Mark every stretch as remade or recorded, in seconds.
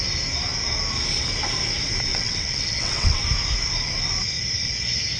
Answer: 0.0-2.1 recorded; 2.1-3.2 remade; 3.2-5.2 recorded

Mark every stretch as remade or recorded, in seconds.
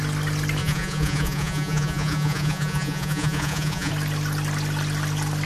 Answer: 0.0-0.6 recorded; 0.6-3.9 remade; 3.9-5.5 recorded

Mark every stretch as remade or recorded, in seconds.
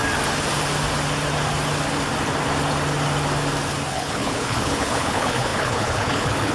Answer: 0.0-3.9 recorded; 3.9-6.5 remade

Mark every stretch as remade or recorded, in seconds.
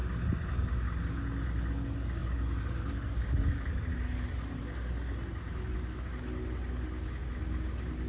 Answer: 0.0-8.1 recorded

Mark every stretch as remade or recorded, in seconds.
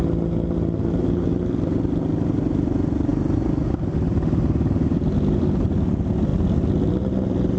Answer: 0.0-7.6 recorded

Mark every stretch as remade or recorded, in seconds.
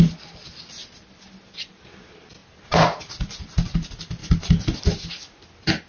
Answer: 0.0-5.9 recorded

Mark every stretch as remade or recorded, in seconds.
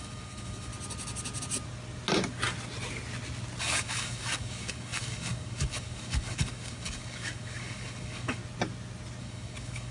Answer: 0.0-0.7 remade; 0.7-3.6 recorded; 3.6-8.4 remade; 8.4-9.2 recorded; 9.2-9.9 remade